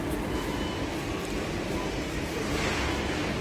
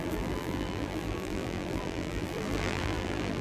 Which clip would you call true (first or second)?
first